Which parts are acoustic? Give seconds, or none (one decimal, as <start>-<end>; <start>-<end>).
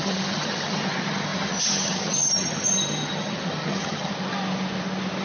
4.1-5.2